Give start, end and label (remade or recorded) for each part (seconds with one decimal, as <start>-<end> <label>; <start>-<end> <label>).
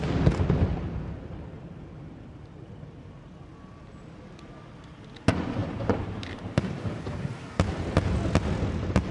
0.0-5.6 recorded; 5.6-7.4 remade; 7.4-9.1 recorded